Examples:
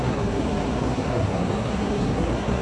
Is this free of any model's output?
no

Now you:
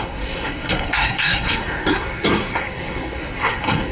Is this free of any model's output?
no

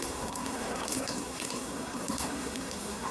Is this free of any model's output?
no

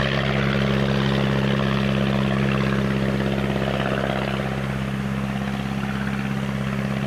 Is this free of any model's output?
yes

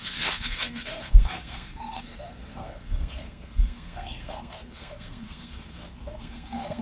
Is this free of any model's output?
no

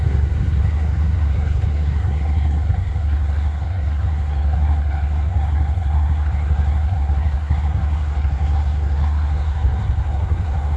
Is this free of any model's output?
no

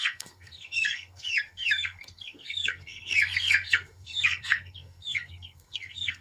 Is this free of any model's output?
no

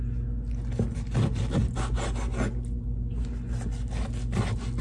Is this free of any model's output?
yes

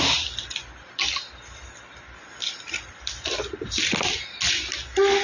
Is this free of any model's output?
yes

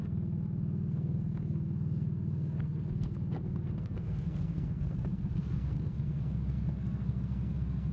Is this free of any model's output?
no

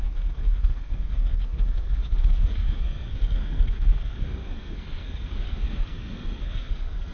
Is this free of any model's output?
no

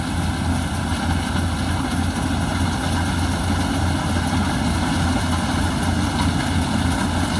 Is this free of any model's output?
yes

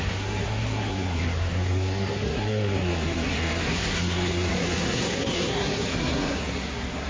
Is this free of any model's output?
no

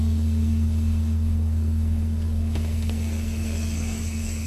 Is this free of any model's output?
no